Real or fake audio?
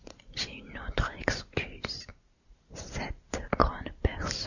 real